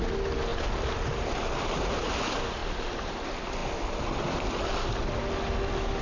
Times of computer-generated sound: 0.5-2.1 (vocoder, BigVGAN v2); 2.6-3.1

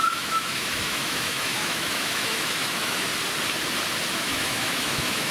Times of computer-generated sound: 0.0-3.1 (autoencoder, DAC-VAE); 4.2-5.3

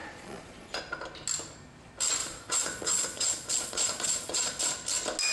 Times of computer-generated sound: 0.0-0.8 (vocoder, Vocos); 2.2-4.6